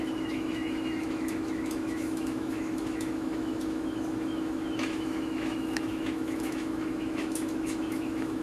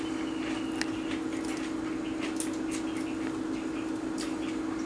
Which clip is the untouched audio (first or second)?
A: second